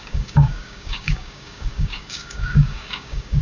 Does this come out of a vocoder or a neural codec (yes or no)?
yes